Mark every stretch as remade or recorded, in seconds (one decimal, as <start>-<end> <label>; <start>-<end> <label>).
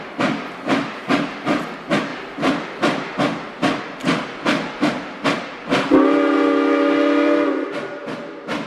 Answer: 0.0-8.7 recorded